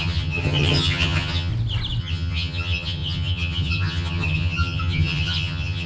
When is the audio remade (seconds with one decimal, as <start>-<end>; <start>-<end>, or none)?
0.0-1.5; 2.0-5.9